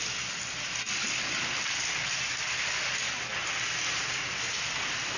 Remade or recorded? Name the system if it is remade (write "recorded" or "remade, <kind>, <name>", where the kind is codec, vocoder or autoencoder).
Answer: recorded